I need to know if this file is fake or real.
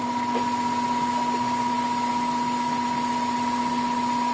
real